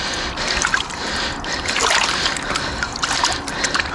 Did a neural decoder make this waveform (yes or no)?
no